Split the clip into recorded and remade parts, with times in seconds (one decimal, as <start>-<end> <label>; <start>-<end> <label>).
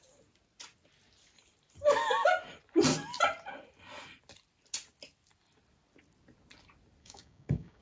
0.0-7.0 recorded; 7.0-7.8 remade